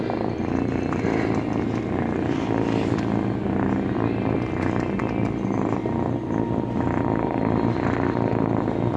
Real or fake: real